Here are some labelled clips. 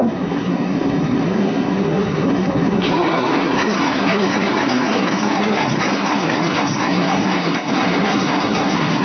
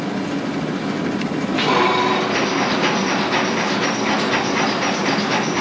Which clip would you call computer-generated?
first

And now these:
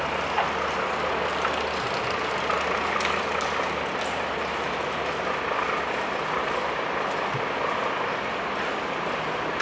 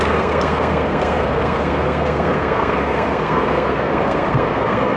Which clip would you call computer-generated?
second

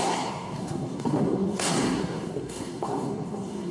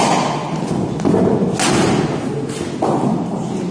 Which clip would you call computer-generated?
first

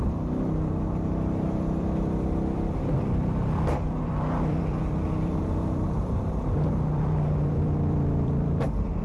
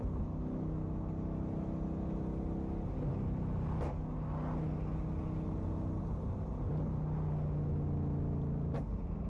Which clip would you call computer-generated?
first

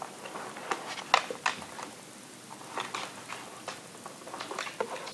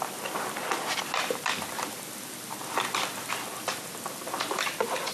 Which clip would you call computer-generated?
second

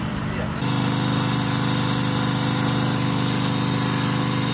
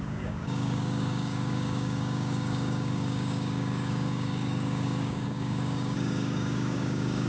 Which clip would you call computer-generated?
second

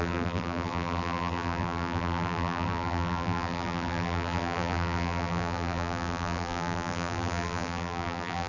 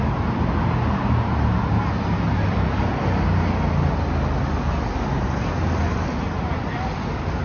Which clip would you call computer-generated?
first